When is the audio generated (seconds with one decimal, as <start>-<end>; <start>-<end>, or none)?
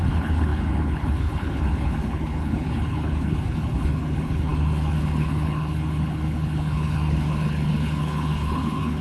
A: 0.0-9.0